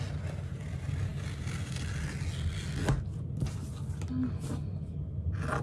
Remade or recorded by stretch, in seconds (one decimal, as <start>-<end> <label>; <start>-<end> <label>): 0.0-5.6 recorded